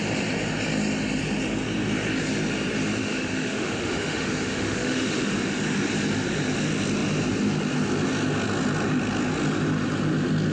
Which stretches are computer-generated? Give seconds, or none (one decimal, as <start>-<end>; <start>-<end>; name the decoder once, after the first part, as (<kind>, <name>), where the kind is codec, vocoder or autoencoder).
3.0-5.3 (autoencoder, DAC-VAE)